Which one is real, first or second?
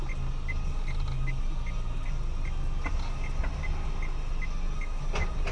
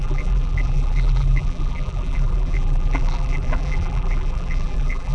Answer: first